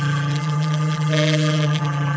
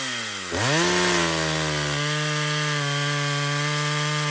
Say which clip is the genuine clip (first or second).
second